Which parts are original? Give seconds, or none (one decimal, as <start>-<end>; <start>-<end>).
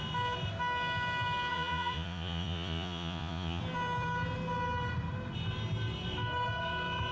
0.0-1.5; 3.6-7.1